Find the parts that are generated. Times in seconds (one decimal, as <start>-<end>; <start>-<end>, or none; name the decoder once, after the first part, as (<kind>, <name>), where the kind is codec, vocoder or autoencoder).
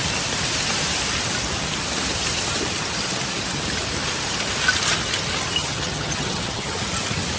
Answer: 5.6-6.8 (vocoder, HiFi-GAN)